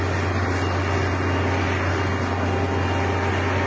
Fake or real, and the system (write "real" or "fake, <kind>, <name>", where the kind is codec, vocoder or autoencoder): real